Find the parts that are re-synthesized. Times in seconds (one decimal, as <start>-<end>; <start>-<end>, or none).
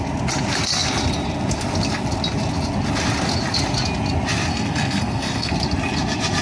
4.5-5.5